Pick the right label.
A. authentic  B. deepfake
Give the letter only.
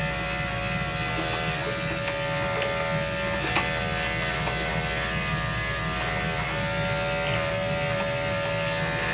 A